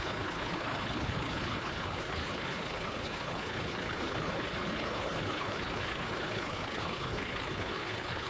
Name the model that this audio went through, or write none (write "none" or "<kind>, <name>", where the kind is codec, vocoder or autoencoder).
codec, HILCodec